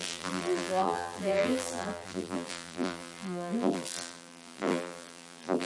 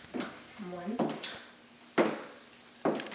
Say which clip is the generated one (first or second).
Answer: first